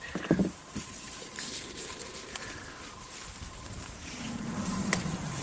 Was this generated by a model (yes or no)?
yes